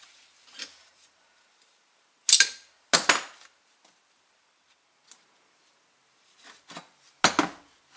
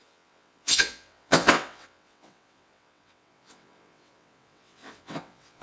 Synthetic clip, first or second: second